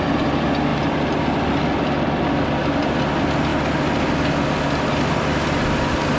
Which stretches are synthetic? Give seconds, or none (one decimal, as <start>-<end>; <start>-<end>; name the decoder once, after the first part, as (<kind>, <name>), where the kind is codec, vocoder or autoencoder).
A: none